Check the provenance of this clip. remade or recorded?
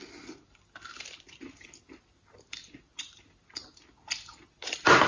recorded